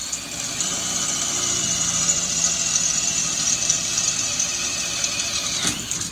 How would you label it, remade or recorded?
remade